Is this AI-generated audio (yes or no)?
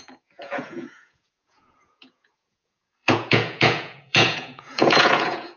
yes